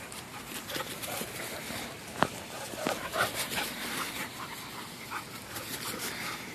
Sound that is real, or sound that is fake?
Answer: real